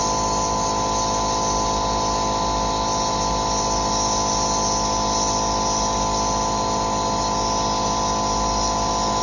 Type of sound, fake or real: real